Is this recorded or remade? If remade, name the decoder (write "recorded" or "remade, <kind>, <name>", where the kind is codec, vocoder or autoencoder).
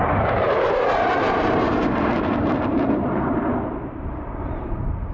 remade, vocoder, BigVGAN v2